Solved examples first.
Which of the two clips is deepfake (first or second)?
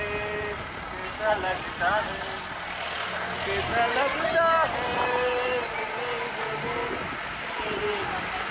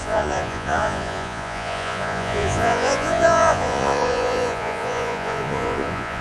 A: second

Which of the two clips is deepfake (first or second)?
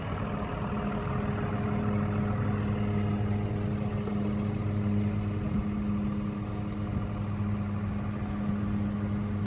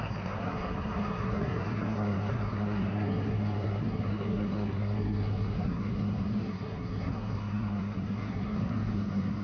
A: second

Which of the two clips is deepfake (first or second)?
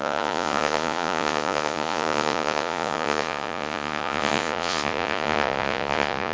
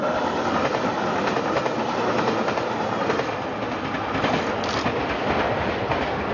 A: first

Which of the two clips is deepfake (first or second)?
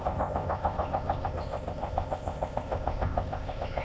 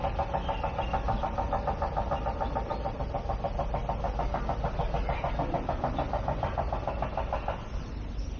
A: first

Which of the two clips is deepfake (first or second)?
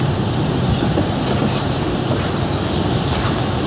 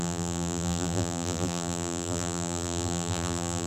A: second